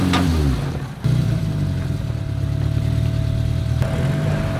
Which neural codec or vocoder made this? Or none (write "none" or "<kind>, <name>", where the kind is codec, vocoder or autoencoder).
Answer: none